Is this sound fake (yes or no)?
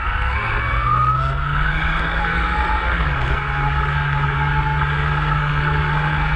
yes